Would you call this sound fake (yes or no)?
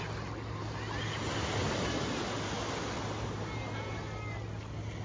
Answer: no